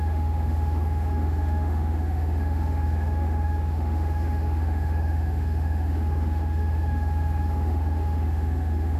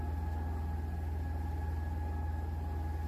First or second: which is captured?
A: second